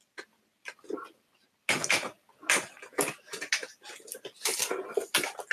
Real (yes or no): yes